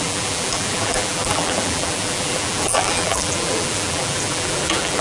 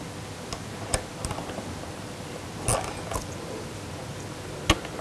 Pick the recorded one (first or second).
second